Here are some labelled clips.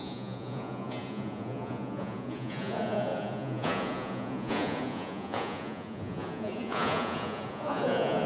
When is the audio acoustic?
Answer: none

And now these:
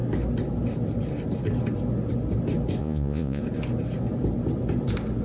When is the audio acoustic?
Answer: 0.0-2.8; 3.4-5.2

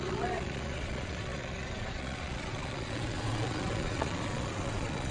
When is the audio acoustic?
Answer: none

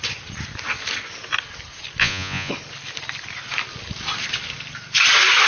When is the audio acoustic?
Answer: 0.0-2.0; 2.5-5.5

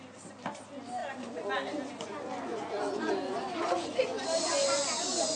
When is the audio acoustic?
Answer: 0.0-2.5; 3.9-5.4

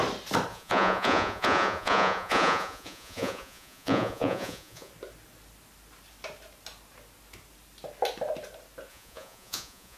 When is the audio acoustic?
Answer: 0.0-0.5; 4.9-8.9